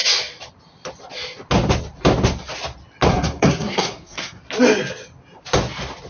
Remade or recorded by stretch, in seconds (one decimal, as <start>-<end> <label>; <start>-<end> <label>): 0.0-3.1 recorded; 3.1-4.4 remade; 4.4-6.1 recorded